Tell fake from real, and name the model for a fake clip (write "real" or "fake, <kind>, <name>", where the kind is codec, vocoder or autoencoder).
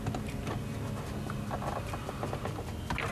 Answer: real